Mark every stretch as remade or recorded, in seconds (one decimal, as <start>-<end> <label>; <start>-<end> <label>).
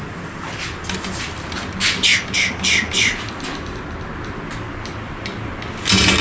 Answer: 0.0-6.2 recorded